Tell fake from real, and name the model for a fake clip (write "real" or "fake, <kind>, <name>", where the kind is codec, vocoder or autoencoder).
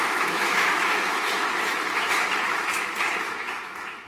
fake, autoencoder, DAC-VAE